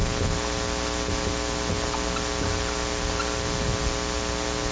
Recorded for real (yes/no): yes